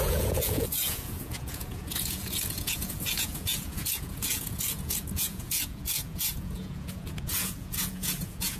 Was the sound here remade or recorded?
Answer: remade